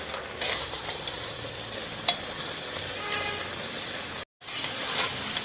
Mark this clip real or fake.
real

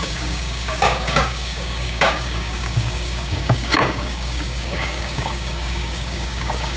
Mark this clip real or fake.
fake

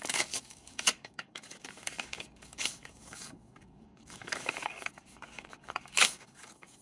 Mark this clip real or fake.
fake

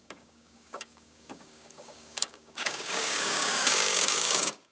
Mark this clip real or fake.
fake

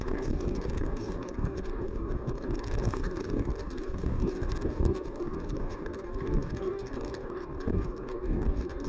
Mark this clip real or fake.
fake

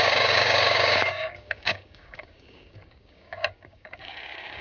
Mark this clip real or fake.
fake